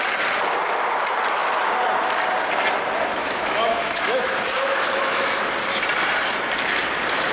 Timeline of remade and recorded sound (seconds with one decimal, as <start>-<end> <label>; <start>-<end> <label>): 0.0-3.1 recorded; 3.1-5.5 remade; 5.5-7.3 recorded